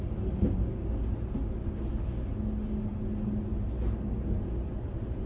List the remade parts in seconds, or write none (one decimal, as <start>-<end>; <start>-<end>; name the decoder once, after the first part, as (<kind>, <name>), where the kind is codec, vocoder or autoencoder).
none